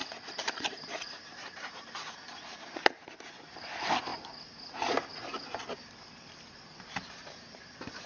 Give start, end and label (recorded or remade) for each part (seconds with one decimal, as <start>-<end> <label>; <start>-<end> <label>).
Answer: 0.0-0.5 recorded; 0.5-4.1 remade; 4.1-7.1 recorded; 7.1-8.1 remade